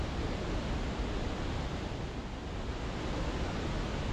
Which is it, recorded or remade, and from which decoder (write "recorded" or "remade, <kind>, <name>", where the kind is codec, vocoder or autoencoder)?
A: recorded